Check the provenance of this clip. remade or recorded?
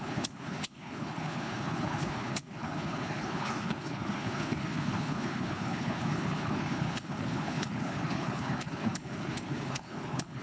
remade